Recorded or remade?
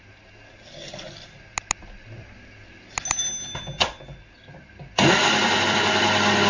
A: recorded